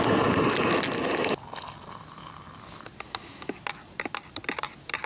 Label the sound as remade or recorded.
recorded